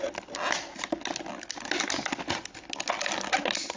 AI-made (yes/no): no